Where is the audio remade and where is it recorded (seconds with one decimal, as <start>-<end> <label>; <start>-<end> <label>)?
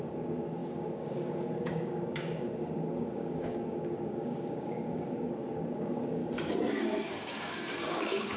0.0-6.2 remade; 6.2-6.7 recorded; 6.7-8.4 remade